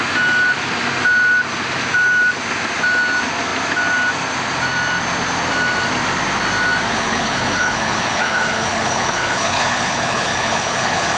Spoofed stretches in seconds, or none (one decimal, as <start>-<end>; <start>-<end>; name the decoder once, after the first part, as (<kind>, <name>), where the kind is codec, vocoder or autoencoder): 6.9-11.2 (codec, HILCodec)